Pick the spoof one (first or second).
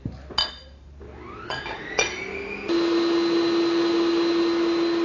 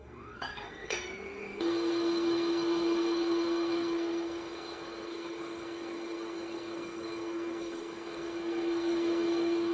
second